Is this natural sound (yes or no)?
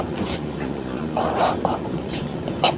no